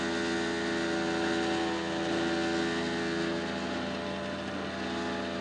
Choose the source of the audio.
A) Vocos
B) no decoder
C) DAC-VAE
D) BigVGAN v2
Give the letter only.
B